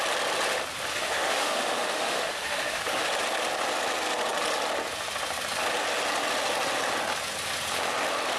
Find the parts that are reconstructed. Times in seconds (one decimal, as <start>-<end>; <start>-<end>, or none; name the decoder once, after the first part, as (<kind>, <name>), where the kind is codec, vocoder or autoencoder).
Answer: 0.9-2.8 (autoencoder, DAC-VAE)